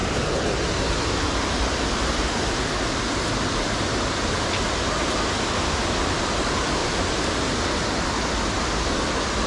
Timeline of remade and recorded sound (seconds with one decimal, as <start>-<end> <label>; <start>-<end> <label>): 0.0-9.5 recorded